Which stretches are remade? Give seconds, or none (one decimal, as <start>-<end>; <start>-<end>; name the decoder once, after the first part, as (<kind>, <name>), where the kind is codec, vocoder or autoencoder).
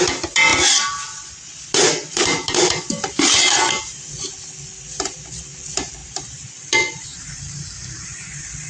6.0-6.5 (vocoder, BigVGAN v2); 7.1-7.7